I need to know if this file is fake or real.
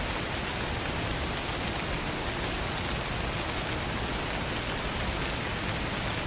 real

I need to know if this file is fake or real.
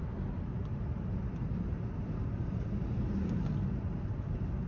real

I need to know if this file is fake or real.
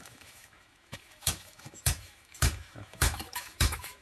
fake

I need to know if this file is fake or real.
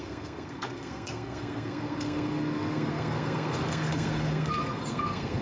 fake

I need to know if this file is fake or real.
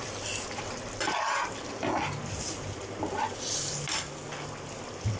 real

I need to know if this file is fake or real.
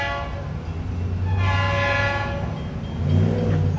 real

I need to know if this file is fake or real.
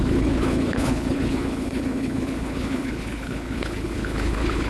fake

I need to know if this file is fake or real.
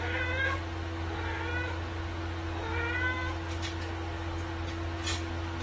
real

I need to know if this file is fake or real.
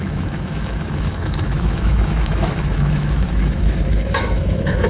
fake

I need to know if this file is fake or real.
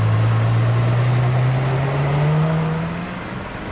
real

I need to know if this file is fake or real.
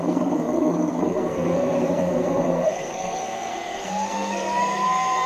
fake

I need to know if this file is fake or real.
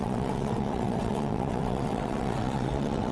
fake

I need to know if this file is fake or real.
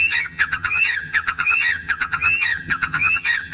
fake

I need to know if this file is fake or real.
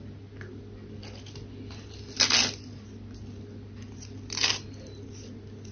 real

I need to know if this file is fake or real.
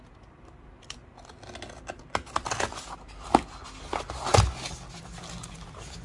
real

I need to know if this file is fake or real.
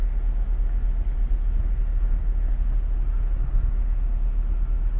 real